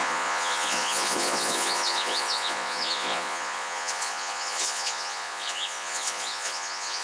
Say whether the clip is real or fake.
fake